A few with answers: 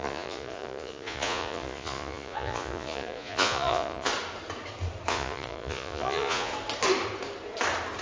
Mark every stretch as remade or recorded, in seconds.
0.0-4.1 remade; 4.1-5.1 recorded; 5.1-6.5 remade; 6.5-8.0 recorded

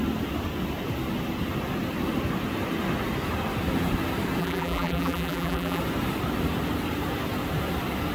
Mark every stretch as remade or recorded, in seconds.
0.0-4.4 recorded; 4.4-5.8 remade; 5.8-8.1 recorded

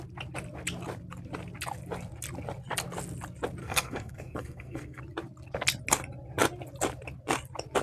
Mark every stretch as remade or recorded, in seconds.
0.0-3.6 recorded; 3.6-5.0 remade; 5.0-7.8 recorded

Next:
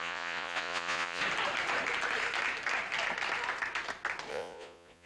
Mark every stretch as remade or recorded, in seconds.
0.0-1.2 remade; 1.2-4.3 recorded; 4.3-5.1 remade

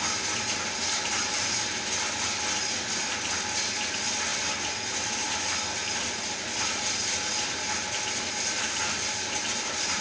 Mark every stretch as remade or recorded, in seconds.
0.0-10.0 recorded

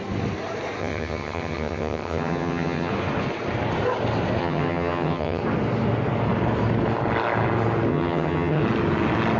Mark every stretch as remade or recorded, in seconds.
0.0-0.8 recorded; 0.8-2.9 remade; 2.9-4.4 recorded; 4.4-5.4 remade; 5.4-7.9 recorded; 7.9-8.6 remade; 8.6-9.4 recorded

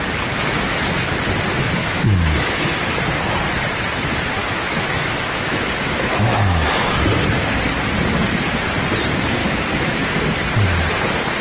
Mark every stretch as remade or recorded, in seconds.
0.0-1.8 recorded; 1.8-2.9 remade; 2.9-4.4 recorded; 4.4-7.0 remade; 7.0-9.4 recorded; 9.4-10.0 remade; 10.0-11.4 recorded